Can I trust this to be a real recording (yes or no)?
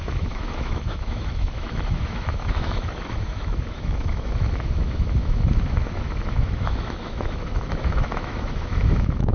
no